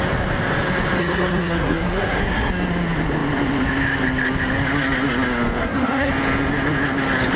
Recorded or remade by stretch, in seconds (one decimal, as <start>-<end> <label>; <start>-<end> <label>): 0.0-1.0 recorded; 1.0-2.5 remade; 2.5-5.6 recorded; 5.6-6.1 remade; 6.1-7.4 recorded